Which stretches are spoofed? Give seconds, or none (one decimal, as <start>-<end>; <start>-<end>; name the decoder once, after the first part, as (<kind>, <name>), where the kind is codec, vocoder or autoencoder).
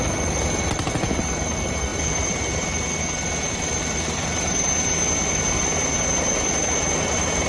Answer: none